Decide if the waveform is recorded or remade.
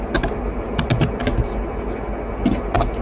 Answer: recorded